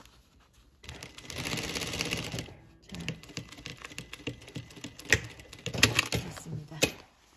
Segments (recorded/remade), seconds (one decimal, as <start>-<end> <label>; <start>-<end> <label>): 0.0-7.4 recorded